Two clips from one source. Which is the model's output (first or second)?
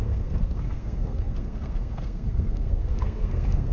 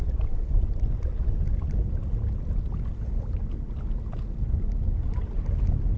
first